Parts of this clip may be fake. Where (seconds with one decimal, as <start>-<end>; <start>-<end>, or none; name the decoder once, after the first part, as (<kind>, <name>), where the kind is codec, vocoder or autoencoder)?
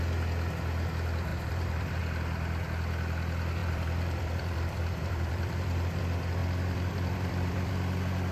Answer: 1.3-2.0 (vocoder, BigVGAN v2); 3.6-6.0; 6.4-7.7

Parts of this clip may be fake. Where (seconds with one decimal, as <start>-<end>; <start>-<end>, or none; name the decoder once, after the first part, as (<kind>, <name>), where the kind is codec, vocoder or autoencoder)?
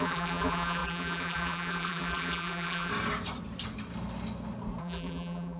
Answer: 0.0-2.9 (vocoder, BigVGAN v2); 4.8-5.6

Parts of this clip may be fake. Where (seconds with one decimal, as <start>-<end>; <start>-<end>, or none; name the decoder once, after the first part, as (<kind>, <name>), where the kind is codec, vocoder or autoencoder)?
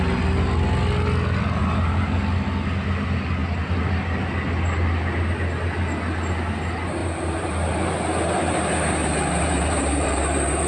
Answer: 1.6-2.2 (vocoder, BigVGAN v2); 7.0-7.9; 9.0-10.7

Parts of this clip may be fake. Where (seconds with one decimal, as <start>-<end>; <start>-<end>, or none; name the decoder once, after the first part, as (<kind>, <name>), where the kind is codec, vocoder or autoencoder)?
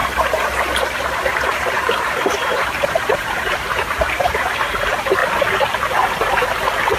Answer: 1.5-4.7 (vocoder, BigVGAN v2)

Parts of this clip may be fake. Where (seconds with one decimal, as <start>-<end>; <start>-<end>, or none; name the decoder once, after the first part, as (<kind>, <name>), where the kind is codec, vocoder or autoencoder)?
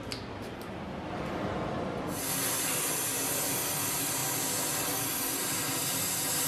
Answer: none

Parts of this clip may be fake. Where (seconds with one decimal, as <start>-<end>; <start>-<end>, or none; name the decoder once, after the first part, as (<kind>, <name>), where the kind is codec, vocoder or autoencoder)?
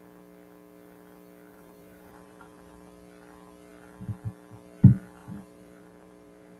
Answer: 1.5-2.7 (vocoder, BigVGAN v2); 5.2-6.6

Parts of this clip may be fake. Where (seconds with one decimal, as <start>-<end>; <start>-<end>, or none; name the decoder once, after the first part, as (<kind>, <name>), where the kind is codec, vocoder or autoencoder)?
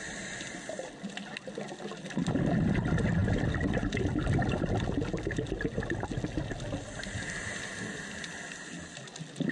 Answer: none